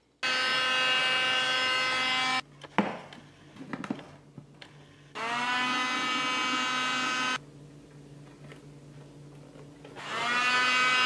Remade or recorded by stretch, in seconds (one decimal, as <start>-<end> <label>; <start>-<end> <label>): 0.0-11.1 recorded